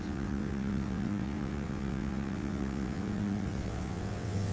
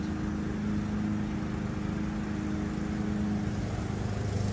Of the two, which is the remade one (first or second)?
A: first